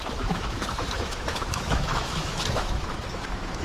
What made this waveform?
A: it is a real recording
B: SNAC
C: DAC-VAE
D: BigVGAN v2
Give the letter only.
C